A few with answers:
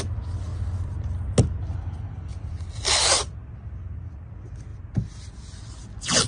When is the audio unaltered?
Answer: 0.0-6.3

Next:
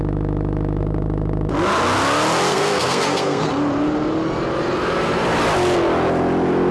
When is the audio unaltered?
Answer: 0.0-2.5; 3.5-6.7

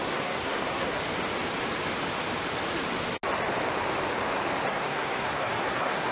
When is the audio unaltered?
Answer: 1.0-4.7

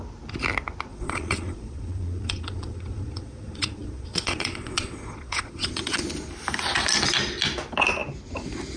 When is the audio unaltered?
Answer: 0.0-0.9; 6.0-8.8

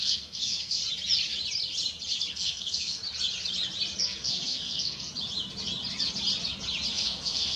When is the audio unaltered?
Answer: 0.8-2.3; 3.0-4.0; 5.1-6.9